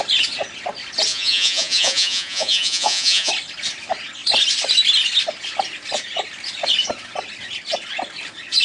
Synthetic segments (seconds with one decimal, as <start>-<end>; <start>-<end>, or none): 1.1-3.3